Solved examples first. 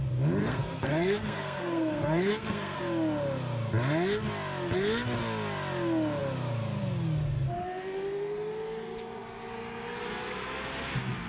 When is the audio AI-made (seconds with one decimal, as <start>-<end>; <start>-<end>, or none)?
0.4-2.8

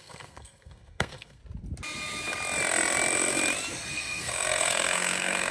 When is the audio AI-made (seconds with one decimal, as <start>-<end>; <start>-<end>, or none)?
0.0-1.4; 3.7-5.5

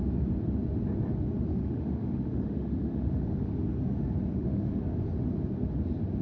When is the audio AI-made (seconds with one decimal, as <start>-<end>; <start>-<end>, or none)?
1.5-3.5; 4.3-4.8

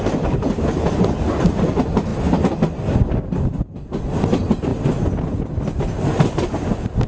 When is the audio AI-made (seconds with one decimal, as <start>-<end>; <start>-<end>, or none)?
none

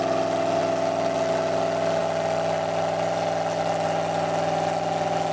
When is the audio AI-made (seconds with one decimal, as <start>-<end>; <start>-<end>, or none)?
none

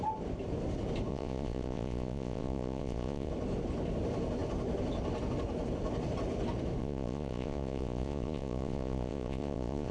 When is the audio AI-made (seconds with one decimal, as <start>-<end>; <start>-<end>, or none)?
1.1-3.3; 6.8-9.9

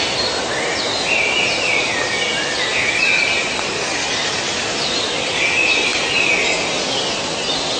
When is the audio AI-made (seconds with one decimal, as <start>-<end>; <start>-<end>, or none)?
none

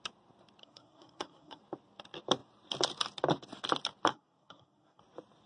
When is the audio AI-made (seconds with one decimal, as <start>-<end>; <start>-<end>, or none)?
0.6-1.6; 4.1-5.0